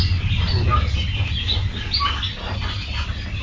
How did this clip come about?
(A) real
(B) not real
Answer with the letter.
A